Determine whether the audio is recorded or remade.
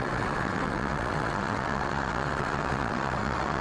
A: remade